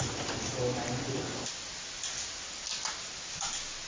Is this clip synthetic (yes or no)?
no